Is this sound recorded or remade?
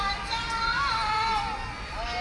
recorded